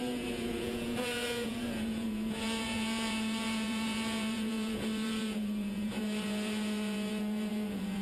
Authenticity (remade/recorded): remade